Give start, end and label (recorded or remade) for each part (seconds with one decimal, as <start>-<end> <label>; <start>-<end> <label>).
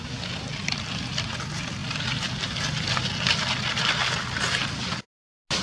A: 0.0-5.6 recorded